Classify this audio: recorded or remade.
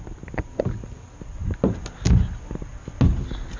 recorded